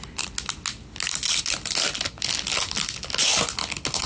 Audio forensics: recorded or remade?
recorded